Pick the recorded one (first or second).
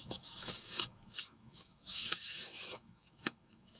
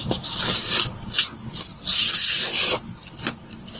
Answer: second